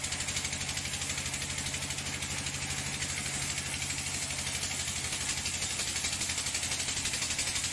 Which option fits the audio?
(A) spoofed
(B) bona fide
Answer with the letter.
B